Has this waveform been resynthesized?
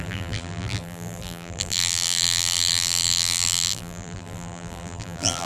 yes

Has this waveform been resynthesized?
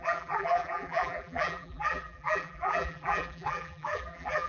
yes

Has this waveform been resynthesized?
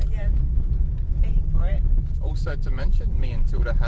yes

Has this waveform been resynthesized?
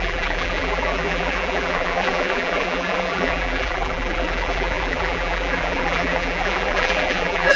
yes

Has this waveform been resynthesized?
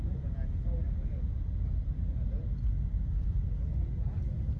no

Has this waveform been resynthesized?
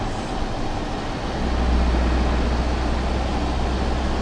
no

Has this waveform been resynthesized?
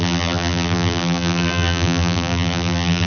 yes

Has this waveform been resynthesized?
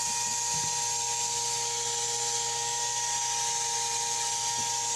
no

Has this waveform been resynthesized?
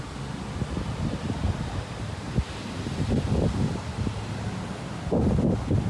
no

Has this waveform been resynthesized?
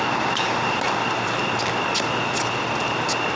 no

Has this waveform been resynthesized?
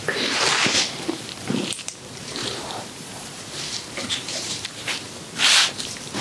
yes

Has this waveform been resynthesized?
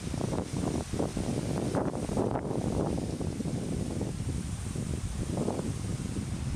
yes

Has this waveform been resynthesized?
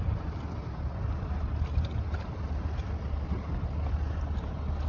no